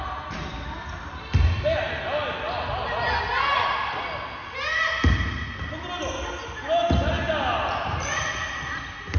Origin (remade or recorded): recorded